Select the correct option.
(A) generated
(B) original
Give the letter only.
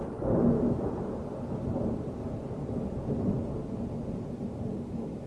B